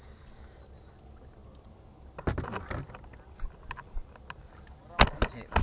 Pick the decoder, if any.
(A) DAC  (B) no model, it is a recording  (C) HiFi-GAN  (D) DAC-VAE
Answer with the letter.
B